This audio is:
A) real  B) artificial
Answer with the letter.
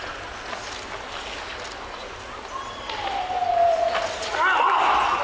A